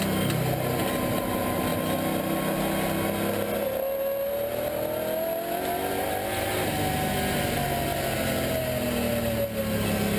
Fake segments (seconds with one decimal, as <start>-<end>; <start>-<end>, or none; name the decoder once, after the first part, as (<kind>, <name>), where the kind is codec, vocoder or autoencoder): none

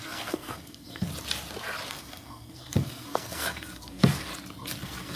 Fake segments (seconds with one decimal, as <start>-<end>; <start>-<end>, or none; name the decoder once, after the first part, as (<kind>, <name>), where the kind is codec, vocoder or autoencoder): 0.0-1.1 (codec, SNAC); 1.9-4.3; 4.8-5.2

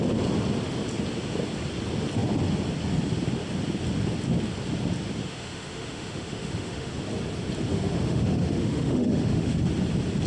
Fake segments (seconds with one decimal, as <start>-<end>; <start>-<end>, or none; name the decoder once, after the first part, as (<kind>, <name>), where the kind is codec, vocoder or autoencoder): 5.2-6.9 (autoencoder, DAC-VAE); 7.7-9.6

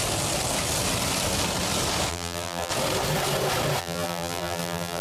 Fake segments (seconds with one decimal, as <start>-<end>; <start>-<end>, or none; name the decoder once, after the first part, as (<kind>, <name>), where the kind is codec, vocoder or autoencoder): 2.1-2.7 (vocoder, BigVGAN v2); 3.8-5.0

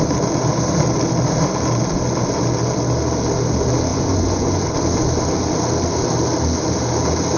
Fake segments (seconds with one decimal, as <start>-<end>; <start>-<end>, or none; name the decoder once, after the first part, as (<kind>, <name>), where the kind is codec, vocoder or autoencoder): 3.9-4.7 (vocoder, Vocos)

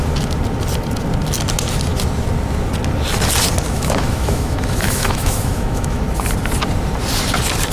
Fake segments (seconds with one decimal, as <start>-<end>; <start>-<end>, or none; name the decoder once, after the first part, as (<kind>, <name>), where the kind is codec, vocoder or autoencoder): 3.7-6.0 (autoencoder, DAC-VAE)

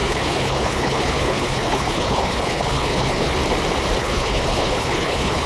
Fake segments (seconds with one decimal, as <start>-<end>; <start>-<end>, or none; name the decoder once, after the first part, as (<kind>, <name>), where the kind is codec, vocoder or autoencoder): 0.0-3.4 (codec, HILCodec); 4.0-5.5

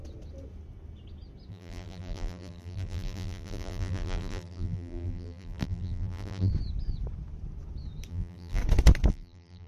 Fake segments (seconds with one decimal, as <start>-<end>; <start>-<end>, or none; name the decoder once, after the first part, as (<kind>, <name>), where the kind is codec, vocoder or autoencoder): 1.5-6.5 (vocoder, BigVGAN v2); 8.1-8.6; 9.1-9.7